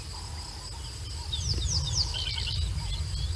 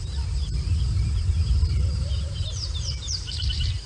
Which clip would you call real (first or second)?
first